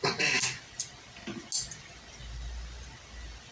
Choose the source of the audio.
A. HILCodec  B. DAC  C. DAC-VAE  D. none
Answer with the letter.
D